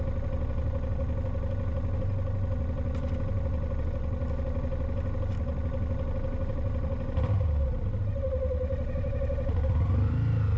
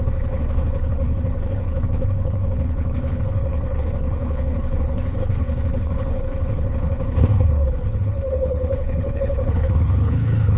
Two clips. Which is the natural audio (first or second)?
first